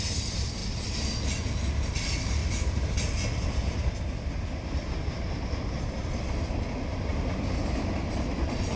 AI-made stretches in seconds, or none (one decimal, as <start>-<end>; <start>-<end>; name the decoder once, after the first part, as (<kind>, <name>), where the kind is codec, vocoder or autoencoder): 0.0-2.4 (vocoder, BigVGAN v2); 4.4-7.1; 7.9-8.8